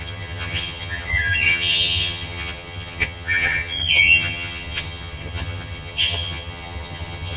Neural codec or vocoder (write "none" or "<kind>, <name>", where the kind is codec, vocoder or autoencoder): vocoder, HiFi-GAN